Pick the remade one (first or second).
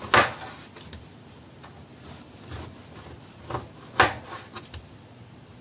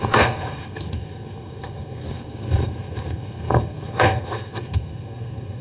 second